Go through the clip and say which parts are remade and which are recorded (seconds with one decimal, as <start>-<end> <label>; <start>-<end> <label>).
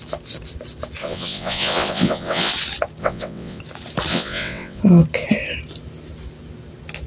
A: 0.0-1.0 recorded; 1.0-2.5 remade; 2.5-3.0 recorded; 3.0-3.6 remade; 3.6-4.1 recorded; 4.1-4.8 remade; 4.8-7.1 recorded